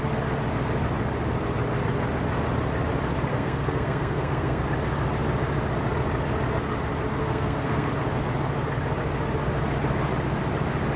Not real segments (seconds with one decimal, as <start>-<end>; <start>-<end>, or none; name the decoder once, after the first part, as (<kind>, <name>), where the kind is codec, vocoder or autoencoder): 3.3-4.6 (codec, SNAC); 7.2-7.9